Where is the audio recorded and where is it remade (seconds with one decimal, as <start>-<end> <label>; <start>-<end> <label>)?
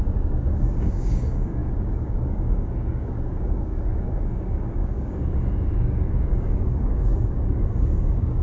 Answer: 0.0-8.4 remade